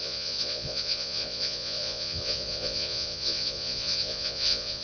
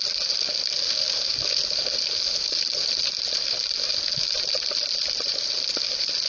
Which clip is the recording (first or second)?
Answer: second